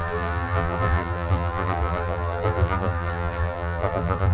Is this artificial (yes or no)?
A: yes